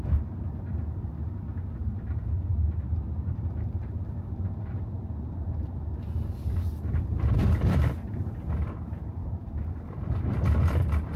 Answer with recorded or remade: remade